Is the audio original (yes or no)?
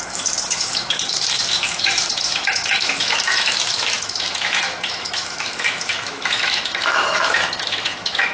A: no